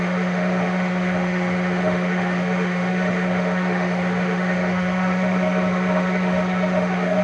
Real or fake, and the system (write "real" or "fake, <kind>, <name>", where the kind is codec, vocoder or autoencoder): fake, autoencoder, DAC-VAE